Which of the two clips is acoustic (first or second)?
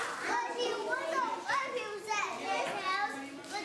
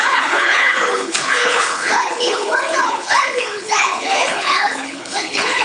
first